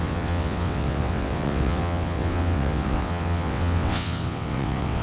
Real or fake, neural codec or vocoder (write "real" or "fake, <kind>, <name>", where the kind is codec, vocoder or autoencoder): fake, vocoder, WaveNeXt